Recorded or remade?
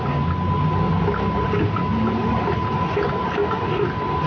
recorded